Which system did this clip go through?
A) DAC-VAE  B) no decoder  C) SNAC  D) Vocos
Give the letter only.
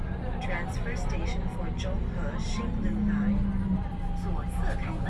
B